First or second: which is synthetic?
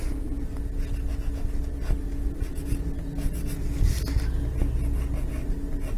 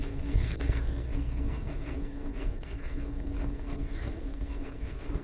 second